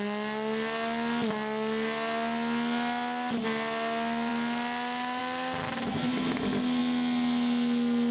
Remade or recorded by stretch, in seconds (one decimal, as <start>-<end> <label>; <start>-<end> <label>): 0.0-8.1 recorded